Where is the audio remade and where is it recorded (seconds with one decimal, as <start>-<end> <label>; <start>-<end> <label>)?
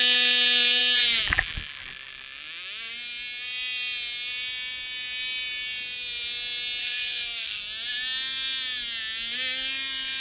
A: 0.0-6.8 recorded; 6.8-7.6 remade; 7.6-10.2 recorded